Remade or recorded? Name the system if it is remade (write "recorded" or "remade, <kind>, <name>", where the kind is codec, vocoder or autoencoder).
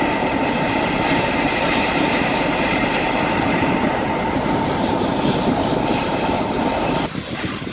remade, vocoder, BigVGAN v2